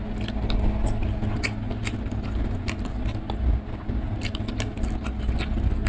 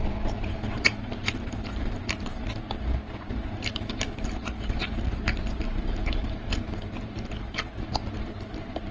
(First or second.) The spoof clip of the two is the second